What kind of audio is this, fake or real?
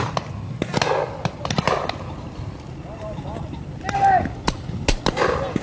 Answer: real